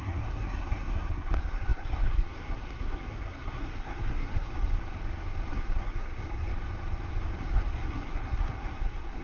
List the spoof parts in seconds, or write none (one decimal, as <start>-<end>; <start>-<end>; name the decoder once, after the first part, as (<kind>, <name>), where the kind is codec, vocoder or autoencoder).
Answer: 0.0-4.7 (codec, SNAC); 5.5-6.5; 7.4-9.2